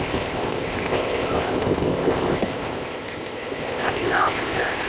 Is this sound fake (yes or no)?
yes